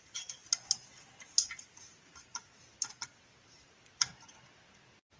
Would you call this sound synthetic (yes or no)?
no